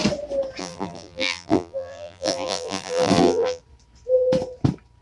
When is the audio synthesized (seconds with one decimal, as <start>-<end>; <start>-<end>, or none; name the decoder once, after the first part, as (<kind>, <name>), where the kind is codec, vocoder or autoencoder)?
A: 0.6-3.6 (vocoder, BigVGAN v2)